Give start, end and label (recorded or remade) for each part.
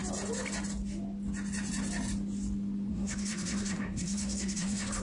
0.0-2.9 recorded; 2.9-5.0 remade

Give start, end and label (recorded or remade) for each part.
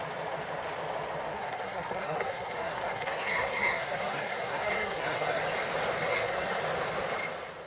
0.0-1.3 recorded; 1.3-5.4 remade; 5.4-6.1 recorded; 6.1-6.6 remade; 6.6-7.7 recorded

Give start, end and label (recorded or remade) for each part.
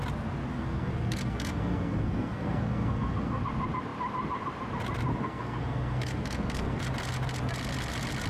0.0-0.5 recorded; 0.5-3.4 remade; 3.4-5.1 recorded; 5.1-6.8 remade; 6.8-8.3 recorded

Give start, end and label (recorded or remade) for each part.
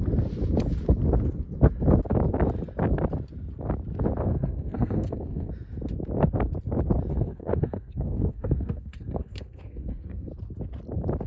0.0-4.3 recorded; 4.3-5.5 remade; 5.5-7.1 recorded; 7.1-10.3 remade; 10.3-11.3 recorded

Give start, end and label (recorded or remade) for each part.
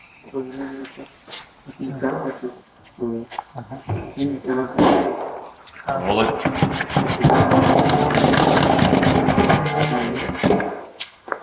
0.0-0.8 remade; 0.8-2.1 recorded; 2.1-5.2 remade; 5.2-7.2 recorded; 7.2-8.0 remade; 8.0-9.3 recorded; 9.3-11.4 remade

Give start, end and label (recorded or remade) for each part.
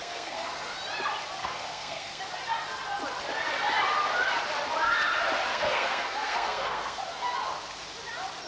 0.0-0.7 remade; 0.7-1.4 recorded; 1.4-2.2 remade; 2.2-5.5 recorded; 5.5-7.0 remade; 7.0-8.5 recorded